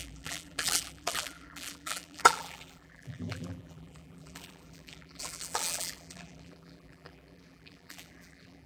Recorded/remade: remade